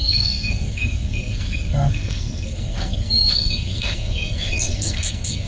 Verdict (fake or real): fake